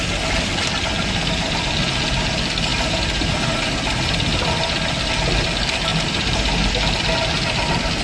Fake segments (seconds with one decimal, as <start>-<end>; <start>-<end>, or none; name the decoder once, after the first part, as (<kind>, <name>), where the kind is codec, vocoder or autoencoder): 2.7-4.1 (vocoder, BigVGAN v2); 5.9-6.7